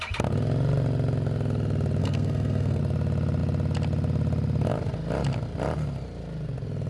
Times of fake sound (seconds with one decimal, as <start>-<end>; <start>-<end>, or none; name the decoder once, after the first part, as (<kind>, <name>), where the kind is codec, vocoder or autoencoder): 2.0-2.8 (codec, SNAC)